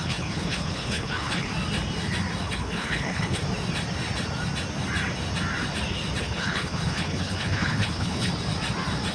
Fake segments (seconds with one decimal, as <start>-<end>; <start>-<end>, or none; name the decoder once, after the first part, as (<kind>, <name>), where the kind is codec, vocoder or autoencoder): 0.0-1.5 (codec, HILCodec); 2.4-3.4; 6.2-8.3